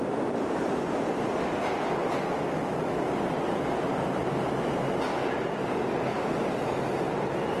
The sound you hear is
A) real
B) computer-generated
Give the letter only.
A